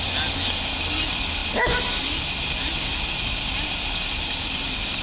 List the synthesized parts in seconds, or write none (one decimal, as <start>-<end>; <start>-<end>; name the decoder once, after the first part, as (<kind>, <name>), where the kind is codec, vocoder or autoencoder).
none